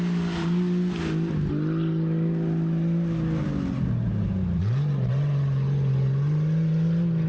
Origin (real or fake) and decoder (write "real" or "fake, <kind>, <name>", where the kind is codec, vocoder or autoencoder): real